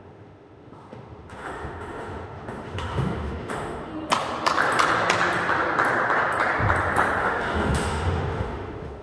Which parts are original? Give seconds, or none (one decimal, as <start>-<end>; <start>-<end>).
3.9-7.2